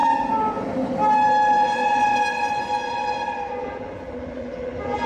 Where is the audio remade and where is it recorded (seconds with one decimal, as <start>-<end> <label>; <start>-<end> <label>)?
0.0-3.6 recorded; 3.6-5.1 remade